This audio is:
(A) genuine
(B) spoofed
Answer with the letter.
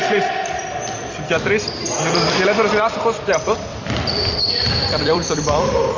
B